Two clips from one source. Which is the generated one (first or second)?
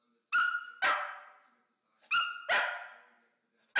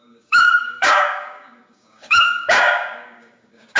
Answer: second